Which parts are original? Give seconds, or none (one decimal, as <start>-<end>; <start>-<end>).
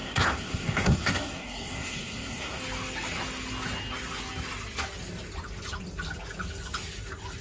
2.6-7.4